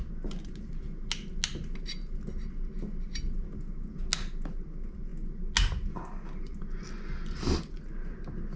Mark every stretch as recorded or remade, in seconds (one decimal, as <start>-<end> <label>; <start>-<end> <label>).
0.0-8.6 recorded